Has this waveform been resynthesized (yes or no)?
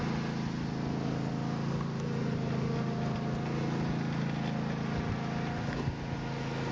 no